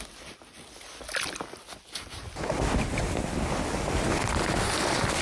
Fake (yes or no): no